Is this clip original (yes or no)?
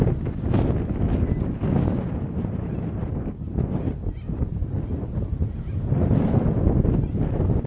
yes